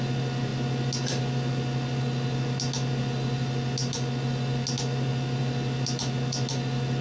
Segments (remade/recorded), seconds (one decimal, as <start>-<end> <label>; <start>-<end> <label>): 0.0-7.0 recorded

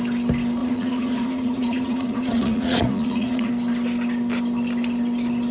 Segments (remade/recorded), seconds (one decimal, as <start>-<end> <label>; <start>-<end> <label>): 0.0-0.6 recorded; 0.6-3.5 remade; 3.5-5.5 recorded

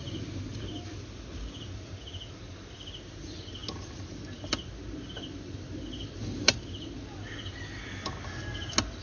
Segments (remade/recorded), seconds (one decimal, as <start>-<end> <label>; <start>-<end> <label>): 0.0-9.0 recorded

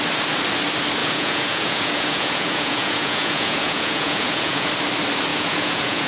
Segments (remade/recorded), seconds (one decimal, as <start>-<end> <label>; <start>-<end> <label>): 0.0-1.0 recorded; 1.0-4.7 remade; 4.7-5.3 recorded; 5.3-6.1 remade

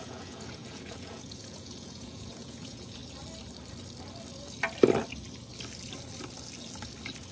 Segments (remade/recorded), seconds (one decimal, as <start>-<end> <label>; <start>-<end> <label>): 0.0-3.0 remade; 3.0-7.3 recorded

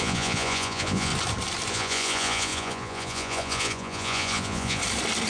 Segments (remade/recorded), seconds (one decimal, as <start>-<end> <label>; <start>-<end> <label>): 0.0-1.1 remade; 1.1-1.7 recorded; 1.7-4.8 remade; 4.8-5.3 recorded

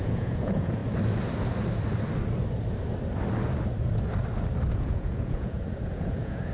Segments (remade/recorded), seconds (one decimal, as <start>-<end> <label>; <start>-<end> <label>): 0.0-0.8 remade; 0.8-4.7 recorded; 4.7-6.5 remade

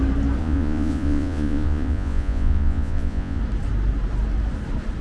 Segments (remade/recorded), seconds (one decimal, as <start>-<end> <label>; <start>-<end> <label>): 0.0-0.4 recorded; 0.4-3.4 remade; 3.4-5.0 recorded